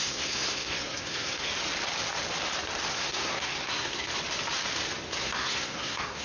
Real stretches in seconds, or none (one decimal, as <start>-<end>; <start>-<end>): 1.5-2.9; 4.1-5.2